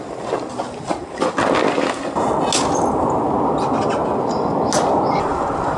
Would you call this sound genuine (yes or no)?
yes